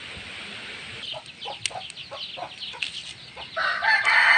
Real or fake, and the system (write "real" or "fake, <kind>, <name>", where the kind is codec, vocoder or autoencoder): real